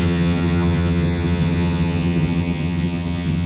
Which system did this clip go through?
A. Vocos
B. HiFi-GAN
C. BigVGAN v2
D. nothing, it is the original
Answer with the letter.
B